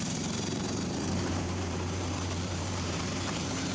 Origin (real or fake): fake